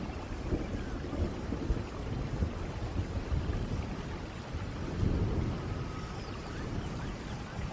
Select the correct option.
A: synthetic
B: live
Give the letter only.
B